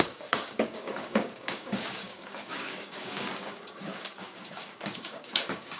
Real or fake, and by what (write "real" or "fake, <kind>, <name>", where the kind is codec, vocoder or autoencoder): fake, codec, DAC